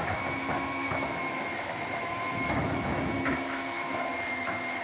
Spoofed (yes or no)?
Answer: yes